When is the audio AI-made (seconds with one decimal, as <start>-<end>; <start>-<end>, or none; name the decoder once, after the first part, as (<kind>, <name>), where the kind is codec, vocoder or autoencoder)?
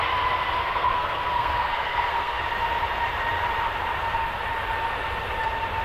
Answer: 0.6-2.4 (codec, SNAC)